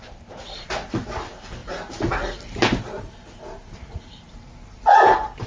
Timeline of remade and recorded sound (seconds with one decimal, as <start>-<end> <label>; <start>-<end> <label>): 0.0-5.5 recorded